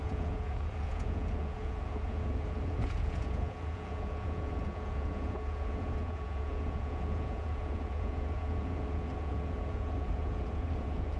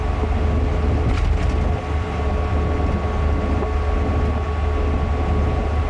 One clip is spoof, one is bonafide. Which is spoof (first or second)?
first